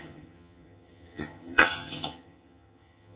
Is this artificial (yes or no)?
yes